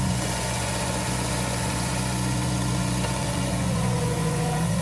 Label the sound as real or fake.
fake